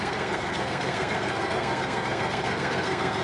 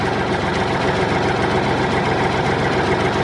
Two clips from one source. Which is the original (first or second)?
second